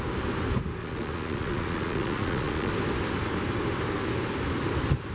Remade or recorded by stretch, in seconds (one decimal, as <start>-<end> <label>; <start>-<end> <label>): 0.0-0.8 recorded; 0.8-2.7 remade; 2.7-5.1 recorded

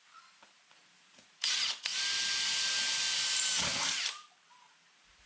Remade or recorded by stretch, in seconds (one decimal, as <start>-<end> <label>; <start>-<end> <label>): 0.0-1.9 remade; 1.9-4.6 recorded; 4.6-5.3 remade